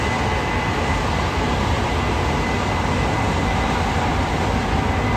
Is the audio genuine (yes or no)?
yes